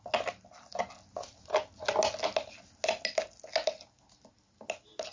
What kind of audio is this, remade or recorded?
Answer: recorded